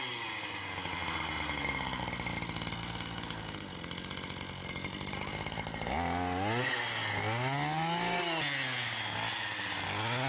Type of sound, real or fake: real